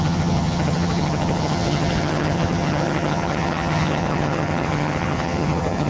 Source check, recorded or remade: remade